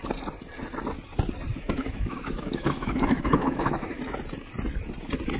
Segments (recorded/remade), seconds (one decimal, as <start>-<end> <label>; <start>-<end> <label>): 0.0-1.5 recorded; 1.5-4.0 remade; 4.0-5.4 recorded